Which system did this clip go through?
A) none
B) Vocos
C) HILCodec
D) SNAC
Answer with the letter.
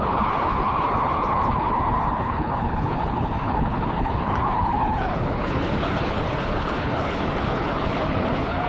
C